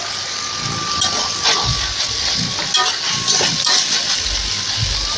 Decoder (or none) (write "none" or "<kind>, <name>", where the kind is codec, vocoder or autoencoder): none